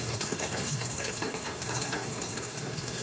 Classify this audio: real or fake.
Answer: fake